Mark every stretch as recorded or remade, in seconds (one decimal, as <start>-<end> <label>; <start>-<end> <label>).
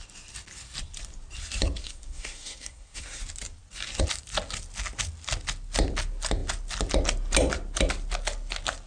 0.0-1.8 recorded; 1.8-3.2 remade; 3.2-8.9 recorded